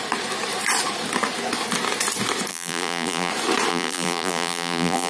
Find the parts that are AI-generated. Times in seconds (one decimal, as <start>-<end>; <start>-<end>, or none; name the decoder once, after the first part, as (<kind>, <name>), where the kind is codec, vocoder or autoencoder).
2.5-3.3 (vocoder, BigVGAN v2); 3.7-5.1